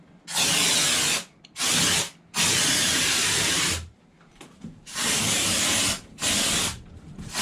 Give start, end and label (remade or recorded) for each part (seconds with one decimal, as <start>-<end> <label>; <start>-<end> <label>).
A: 0.0-2.8 recorded; 2.8-6.9 remade; 6.9-7.4 recorded